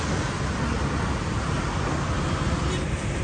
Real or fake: real